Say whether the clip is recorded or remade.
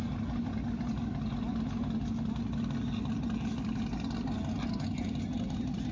recorded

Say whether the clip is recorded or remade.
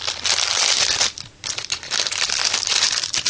recorded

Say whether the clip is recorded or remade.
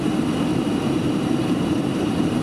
remade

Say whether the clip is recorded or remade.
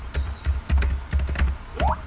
recorded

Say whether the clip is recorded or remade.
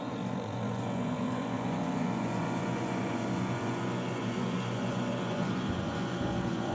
remade